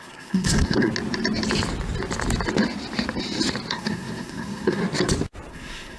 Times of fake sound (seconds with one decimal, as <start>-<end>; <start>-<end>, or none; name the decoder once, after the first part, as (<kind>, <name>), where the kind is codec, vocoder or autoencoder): 0.0-0.9 (codec, SNAC); 3.7-4.8; 5.5-6.0